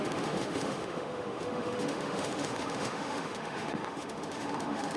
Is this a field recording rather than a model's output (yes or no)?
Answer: no